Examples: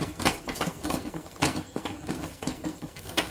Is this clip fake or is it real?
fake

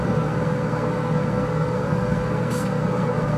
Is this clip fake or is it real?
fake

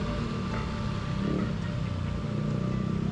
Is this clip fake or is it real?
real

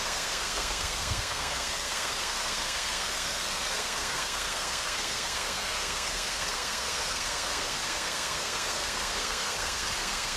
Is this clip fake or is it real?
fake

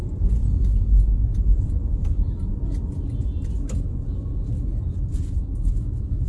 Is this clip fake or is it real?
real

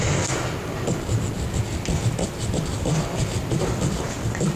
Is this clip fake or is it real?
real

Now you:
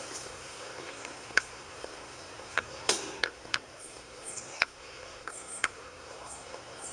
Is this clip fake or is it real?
fake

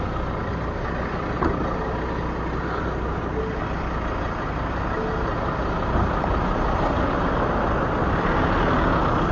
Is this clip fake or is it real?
real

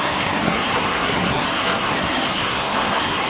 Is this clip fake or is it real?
fake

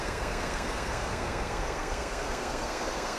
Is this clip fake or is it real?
fake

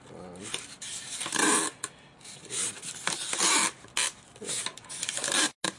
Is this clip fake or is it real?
real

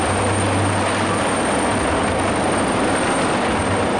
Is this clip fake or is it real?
real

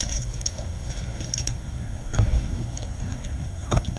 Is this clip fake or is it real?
fake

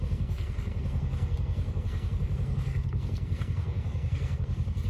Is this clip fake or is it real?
fake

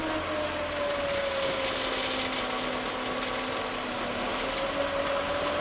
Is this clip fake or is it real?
real